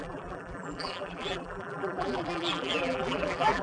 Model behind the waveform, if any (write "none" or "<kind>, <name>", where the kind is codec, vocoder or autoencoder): vocoder, BigVGAN v2